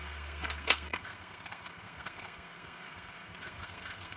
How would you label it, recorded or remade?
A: remade